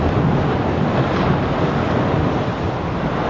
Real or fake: real